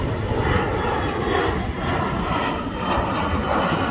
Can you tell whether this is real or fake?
real